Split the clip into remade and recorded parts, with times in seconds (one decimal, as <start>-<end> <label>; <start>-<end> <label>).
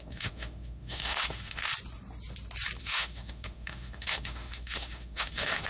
0.0-1.7 remade; 1.7-2.8 recorded; 2.8-5.7 remade